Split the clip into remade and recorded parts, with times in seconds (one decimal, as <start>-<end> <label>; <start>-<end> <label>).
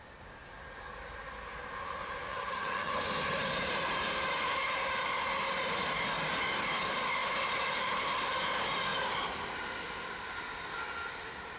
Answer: 0.0-2.3 recorded; 2.3-2.9 remade; 2.9-11.6 recorded